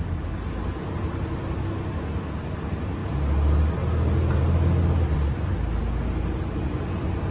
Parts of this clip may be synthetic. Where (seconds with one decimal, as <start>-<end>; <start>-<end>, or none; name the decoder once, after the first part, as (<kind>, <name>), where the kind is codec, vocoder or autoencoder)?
none